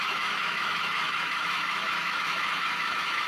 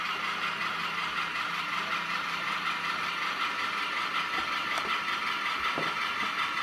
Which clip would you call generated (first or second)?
first